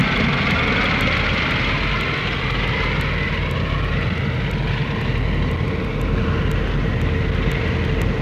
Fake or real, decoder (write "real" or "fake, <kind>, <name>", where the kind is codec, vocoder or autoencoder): real